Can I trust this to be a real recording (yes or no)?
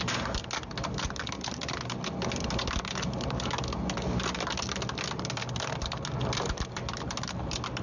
yes